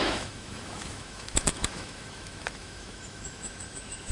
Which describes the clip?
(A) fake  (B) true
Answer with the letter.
A